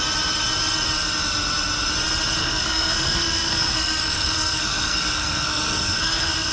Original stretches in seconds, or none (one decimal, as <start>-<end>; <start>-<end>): 0.0-2.4